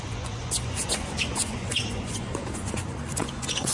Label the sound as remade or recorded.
remade